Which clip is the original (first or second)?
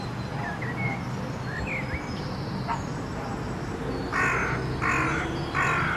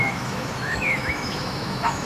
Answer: first